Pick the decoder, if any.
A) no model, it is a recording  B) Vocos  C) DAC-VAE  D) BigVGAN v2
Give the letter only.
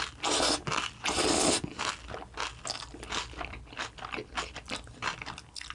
A